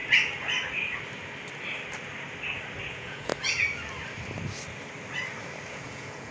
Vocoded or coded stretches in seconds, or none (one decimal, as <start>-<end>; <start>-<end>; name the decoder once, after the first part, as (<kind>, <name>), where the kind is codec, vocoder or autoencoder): 2.9-3.3 (vocoder, Vocos); 5.7-6.3